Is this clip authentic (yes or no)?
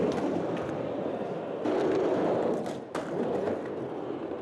yes